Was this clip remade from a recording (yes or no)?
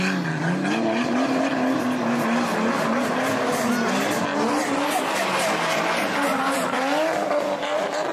no